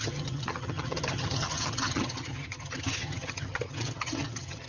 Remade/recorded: remade